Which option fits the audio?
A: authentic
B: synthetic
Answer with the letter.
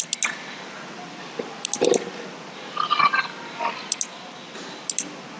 A